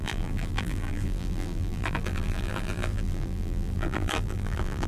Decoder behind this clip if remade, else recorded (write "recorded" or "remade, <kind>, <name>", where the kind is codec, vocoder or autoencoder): remade, vocoder, BigVGAN v2